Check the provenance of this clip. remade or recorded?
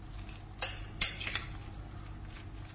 recorded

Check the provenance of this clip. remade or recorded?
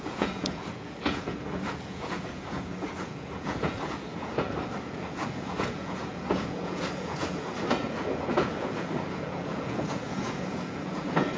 remade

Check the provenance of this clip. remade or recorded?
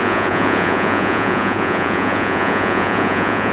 remade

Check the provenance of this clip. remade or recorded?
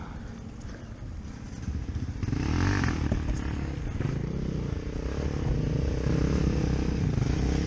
recorded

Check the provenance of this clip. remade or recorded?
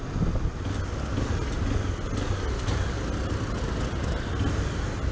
recorded